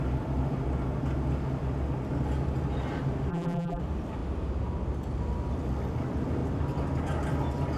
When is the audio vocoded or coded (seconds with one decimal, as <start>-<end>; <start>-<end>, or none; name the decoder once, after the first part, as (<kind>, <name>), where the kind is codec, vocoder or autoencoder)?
3.3-3.8 (vocoder, BigVGAN v2)